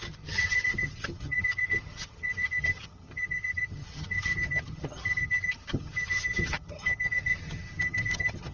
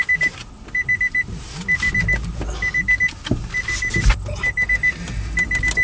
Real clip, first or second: second